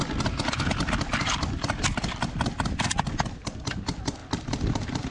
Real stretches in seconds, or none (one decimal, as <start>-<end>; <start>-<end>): 0.0-5.1